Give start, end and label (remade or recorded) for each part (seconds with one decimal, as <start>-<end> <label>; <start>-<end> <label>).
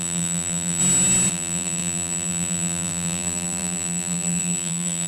0.0-0.8 remade; 0.8-1.3 recorded; 1.3-5.1 remade